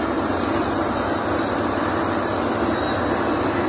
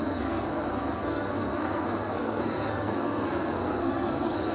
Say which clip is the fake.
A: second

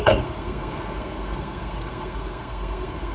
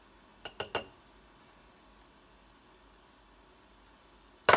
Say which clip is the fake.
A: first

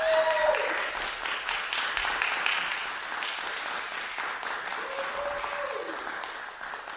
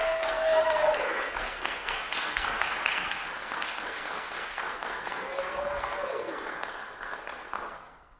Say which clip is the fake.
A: second